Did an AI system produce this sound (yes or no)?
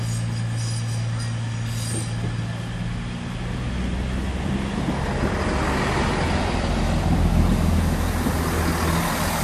no